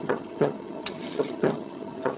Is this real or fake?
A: fake